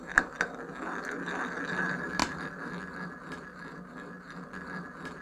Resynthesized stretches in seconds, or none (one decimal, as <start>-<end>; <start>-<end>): none